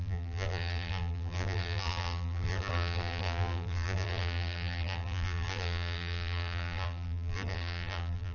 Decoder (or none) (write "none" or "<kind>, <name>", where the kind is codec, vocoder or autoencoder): vocoder, BigVGAN v2